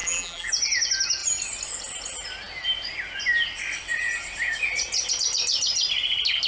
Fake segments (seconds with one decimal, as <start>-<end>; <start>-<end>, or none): 0.0-0.5

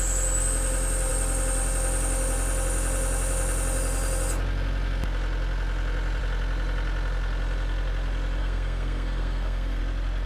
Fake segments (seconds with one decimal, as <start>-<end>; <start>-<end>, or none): 8.4-9.8

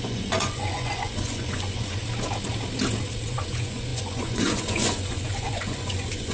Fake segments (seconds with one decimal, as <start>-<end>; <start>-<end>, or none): 0.0-2.0; 3.3-6.3

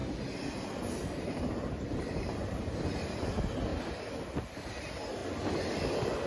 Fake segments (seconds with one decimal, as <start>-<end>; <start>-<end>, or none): 1.2-3.7; 4.5-5.2

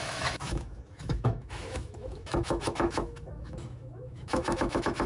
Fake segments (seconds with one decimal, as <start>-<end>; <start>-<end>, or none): 0.0-5.1